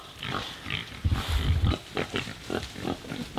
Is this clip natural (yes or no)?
yes